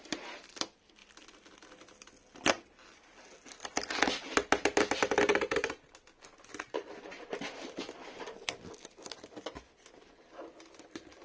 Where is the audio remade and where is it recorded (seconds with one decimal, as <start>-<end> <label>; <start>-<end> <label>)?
0.0-11.2 recorded